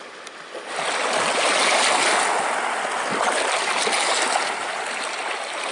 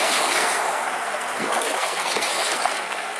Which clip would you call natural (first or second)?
first